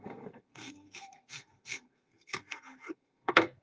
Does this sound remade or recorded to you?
remade